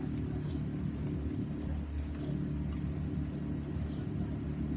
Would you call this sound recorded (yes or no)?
yes